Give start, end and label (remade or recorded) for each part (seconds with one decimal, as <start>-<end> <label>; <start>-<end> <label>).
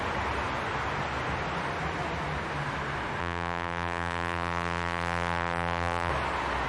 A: 0.0-3.2 recorded; 3.2-6.1 remade; 6.1-6.7 recorded